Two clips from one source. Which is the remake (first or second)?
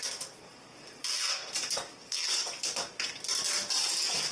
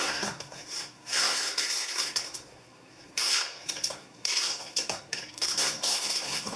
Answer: second